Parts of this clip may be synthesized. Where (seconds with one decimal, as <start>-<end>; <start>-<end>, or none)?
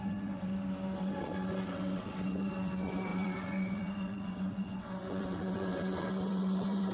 0.0-0.5; 1.0-6.9